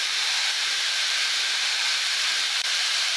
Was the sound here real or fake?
fake